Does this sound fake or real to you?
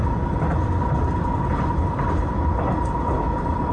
real